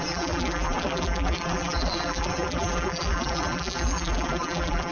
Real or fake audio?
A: fake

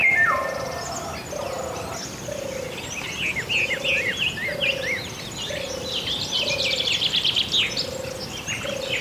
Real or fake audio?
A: real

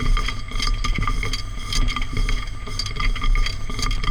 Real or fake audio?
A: real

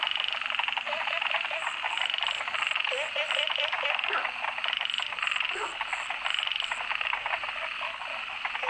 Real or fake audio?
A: real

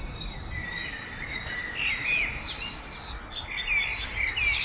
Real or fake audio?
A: real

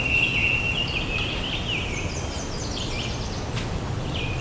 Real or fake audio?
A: real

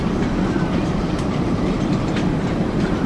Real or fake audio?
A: fake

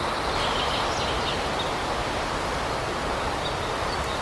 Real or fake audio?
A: real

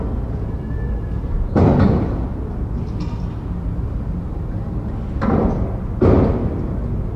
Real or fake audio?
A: real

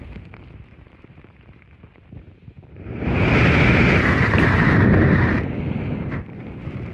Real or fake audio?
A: fake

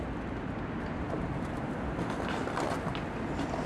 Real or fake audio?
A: real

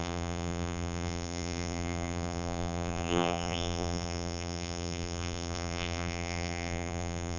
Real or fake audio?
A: fake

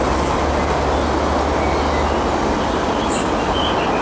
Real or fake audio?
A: real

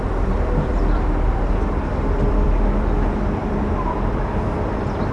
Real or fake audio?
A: fake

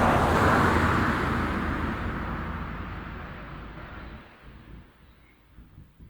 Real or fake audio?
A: real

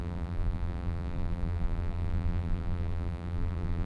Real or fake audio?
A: fake